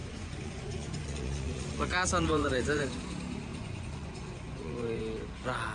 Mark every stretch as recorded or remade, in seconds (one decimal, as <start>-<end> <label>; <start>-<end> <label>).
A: 0.0-3.0 remade; 3.0-3.5 recorded; 3.5-5.0 remade; 5.0-5.7 recorded